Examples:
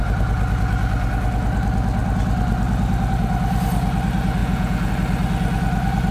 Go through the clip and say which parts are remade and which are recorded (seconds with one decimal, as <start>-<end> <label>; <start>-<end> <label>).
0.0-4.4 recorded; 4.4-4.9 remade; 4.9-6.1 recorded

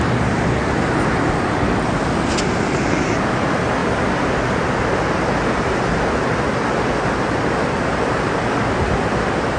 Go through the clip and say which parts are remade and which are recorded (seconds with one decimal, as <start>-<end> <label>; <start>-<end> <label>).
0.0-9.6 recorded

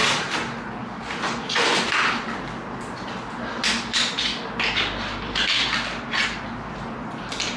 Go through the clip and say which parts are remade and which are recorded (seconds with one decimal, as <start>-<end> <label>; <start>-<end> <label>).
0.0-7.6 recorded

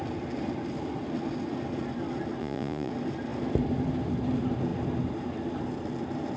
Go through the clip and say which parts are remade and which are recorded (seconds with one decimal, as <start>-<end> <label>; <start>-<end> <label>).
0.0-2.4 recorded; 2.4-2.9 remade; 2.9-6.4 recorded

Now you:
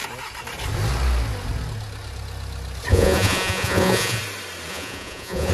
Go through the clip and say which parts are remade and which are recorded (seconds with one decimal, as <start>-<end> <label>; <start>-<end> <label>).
0.0-2.9 recorded; 2.9-4.2 remade; 4.2-4.7 recorded; 4.7-5.5 remade

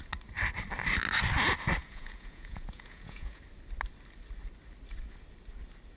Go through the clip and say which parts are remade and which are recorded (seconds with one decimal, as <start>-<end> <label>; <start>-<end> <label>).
0.0-1.8 recorded; 1.8-3.4 remade; 3.4-6.0 recorded

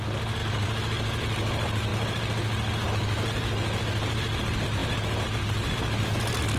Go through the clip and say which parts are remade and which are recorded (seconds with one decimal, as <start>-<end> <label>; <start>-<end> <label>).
0.0-6.6 recorded

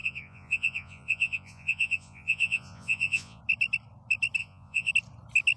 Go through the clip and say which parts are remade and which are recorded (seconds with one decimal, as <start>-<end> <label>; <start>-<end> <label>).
0.0-3.4 remade; 3.4-4.4 recorded; 4.4-4.9 remade; 4.9-5.6 recorded